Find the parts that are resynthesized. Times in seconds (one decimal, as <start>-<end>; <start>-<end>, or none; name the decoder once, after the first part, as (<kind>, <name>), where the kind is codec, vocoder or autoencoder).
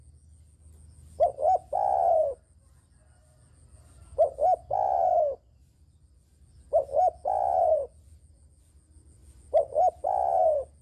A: none